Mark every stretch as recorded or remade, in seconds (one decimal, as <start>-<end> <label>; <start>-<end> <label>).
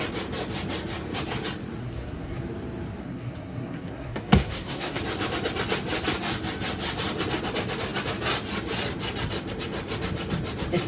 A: 0.0-1.8 recorded; 1.8-2.4 remade; 2.4-3.0 recorded; 3.0-5.0 remade; 5.0-10.9 recorded